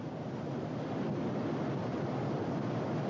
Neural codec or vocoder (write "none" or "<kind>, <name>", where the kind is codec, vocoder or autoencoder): none